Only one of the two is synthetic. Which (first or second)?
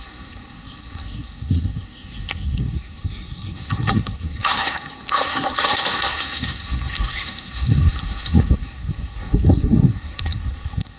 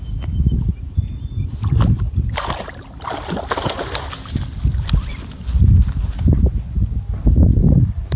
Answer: first